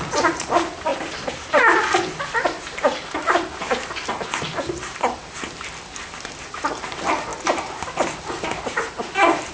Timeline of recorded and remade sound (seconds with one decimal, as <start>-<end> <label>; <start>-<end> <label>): 0.0-9.5 recorded

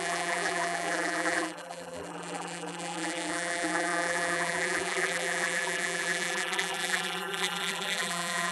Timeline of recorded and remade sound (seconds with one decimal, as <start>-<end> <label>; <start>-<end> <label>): 0.0-8.5 remade

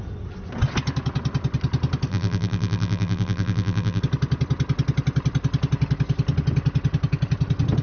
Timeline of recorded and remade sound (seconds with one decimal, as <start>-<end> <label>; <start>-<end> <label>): 0.0-2.1 recorded; 2.1-4.0 remade; 4.0-7.8 recorded

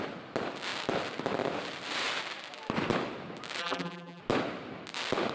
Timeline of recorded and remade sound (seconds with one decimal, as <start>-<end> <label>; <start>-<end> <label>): 0.0-3.6 recorded; 3.6-4.2 remade; 4.2-5.3 recorded

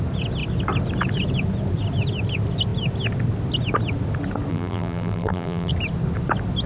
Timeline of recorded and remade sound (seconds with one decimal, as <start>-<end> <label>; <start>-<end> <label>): 0.0-4.5 recorded; 4.5-5.7 remade; 5.7-6.7 recorded

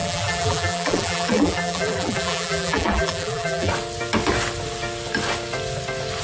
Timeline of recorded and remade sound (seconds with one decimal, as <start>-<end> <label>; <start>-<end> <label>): 0.0-3.7 remade; 3.7-6.2 recorded

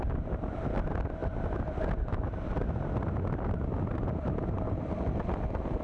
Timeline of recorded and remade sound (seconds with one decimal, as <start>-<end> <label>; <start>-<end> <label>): 0.0-1.2 remade; 1.2-4.7 recorded; 4.7-5.8 remade